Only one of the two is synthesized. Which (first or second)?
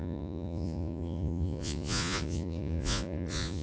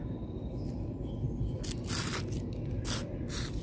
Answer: first